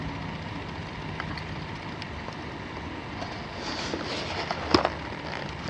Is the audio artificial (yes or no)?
no